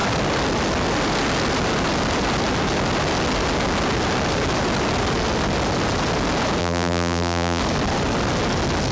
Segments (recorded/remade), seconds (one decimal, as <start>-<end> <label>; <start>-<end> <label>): 0.0-6.6 recorded; 6.6-7.6 remade; 7.6-8.9 recorded